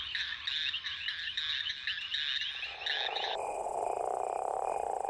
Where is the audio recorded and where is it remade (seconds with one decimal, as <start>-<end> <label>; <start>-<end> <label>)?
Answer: 0.0-5.1 recorded